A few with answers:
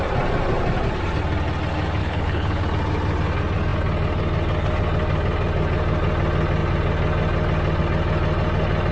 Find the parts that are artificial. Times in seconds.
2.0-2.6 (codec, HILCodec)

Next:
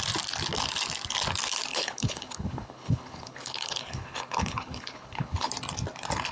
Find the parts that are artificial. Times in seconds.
1.7-5.5 (codec, HILCodec)

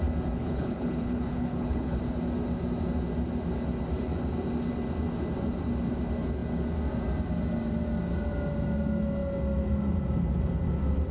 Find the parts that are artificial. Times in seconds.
0.4-2.0 (codec, HILCodec)

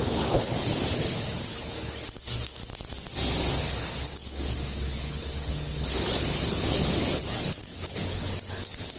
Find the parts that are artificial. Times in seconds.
0.0-2.6 (codec, HILCodec); 3.6-9.0